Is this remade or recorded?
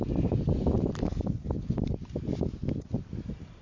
recorded